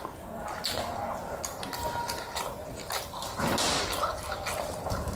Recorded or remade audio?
recorded